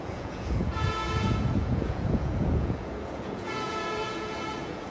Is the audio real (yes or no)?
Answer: no